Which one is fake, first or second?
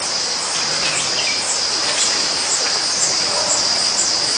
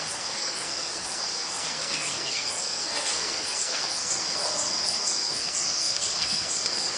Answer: second